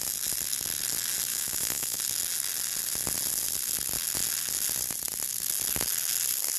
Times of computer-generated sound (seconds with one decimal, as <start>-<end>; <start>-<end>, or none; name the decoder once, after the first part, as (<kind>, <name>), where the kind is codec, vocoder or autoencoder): 1.3-2.0 (autoencoder, DAC-VAE)

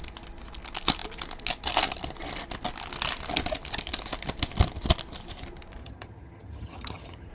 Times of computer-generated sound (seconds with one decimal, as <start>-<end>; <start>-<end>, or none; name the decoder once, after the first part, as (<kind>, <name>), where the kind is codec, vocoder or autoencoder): 5.8-7.3 (vocoder, HiFi-GAN)